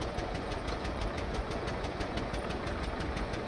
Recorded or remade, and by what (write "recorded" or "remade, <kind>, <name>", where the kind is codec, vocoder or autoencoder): remade, vocoder, Vocos